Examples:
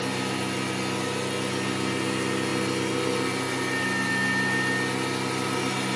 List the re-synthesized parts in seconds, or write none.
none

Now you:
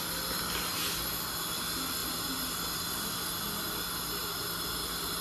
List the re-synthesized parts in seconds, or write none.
none

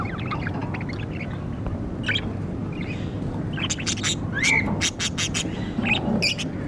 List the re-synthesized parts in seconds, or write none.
none